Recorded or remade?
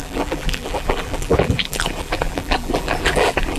remade